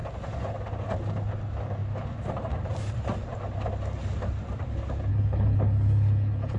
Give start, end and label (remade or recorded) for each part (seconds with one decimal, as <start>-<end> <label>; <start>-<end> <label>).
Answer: 0.0-5.1 recorded; 5.1-6.6 remade